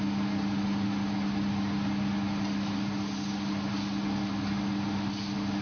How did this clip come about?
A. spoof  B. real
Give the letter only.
B